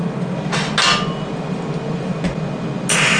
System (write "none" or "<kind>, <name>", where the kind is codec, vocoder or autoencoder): none